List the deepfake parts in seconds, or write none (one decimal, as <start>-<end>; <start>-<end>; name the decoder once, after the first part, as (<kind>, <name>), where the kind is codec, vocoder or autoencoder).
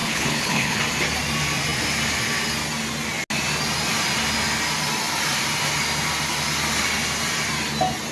0.0-0.8 (codec, HILCodec)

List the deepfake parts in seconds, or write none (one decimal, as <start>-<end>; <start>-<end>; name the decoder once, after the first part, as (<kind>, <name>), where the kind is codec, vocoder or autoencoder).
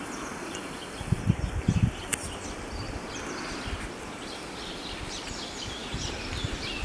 none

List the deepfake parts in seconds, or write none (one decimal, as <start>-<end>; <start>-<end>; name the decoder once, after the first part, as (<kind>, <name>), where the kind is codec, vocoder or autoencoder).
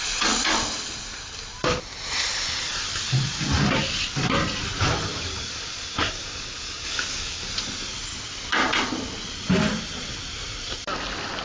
5.1-7.5 (codec, DAC)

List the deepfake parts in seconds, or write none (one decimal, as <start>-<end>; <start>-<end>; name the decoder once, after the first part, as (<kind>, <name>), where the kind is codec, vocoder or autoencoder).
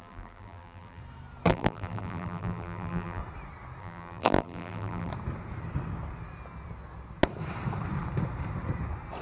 0.0-1.0 (vocoder, BigVGAN v2); 1.5-3.2; 3.8-5.1